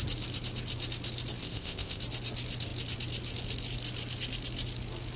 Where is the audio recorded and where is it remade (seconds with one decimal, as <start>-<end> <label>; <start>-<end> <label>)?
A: 0.0-1.4 recorded; 1.4-2.0 remade; 2.0-5.2 recorded